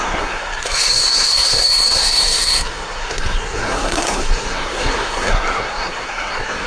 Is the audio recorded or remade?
remade